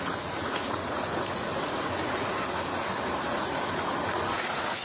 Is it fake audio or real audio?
fake